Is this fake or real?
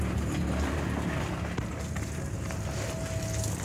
real